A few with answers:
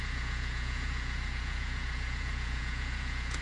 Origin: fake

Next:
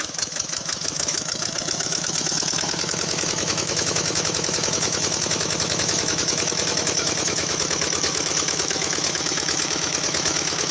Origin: fake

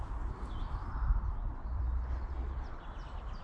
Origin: real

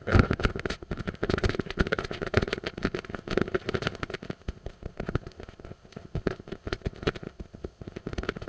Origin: fake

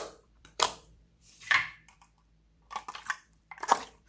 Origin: fake